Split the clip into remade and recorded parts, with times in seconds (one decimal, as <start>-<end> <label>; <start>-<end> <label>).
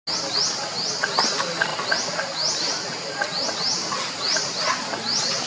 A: 0.0-5.5 recorded